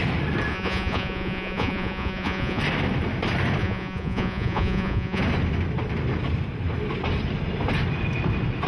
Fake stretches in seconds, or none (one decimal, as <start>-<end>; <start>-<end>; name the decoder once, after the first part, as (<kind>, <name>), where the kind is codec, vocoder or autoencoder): 0.5-2.6 (vocoder, Vocos); 3.6-5.2